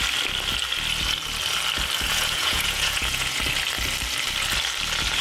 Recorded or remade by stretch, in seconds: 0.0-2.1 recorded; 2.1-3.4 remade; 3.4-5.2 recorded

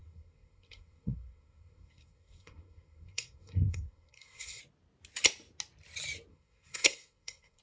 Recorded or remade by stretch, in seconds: 0.0-4.6 remade; 4.6-6.3 recorded; 6.3-7.6 remade